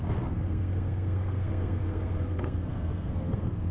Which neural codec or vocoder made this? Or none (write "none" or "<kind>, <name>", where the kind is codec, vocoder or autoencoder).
codec, SNAC